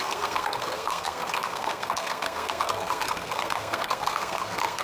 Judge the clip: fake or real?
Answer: fake